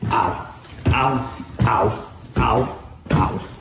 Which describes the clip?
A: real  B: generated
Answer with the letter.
A